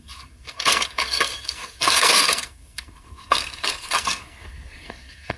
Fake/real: fake